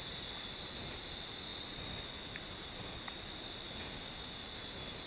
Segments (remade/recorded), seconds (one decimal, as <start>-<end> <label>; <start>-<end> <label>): 0.0-5.1 recorded